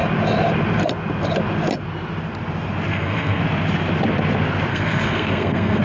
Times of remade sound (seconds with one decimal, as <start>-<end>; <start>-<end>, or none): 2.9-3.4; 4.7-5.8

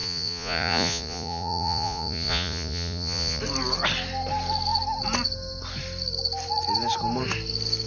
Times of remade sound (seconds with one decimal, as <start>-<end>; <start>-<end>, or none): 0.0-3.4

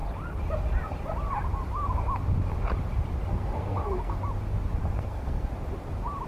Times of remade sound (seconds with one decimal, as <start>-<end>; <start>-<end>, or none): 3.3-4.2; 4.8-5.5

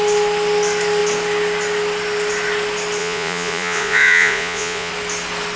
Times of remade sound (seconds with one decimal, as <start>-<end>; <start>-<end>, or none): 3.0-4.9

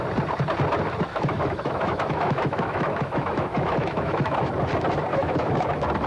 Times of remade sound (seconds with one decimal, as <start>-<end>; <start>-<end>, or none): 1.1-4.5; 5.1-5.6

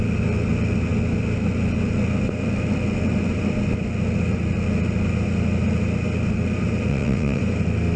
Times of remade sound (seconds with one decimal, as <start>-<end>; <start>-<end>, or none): 6.9-7.4

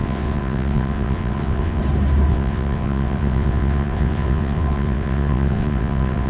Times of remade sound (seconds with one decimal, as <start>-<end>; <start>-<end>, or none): 0.0-1.8; 2.3-6.3

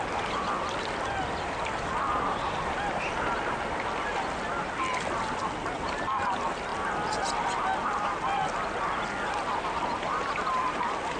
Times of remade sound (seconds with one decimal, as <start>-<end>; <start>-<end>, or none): none